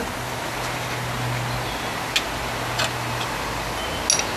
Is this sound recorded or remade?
recorded